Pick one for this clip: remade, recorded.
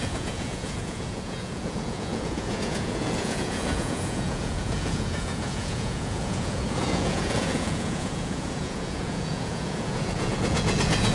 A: remade